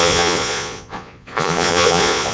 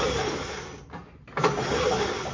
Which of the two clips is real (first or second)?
second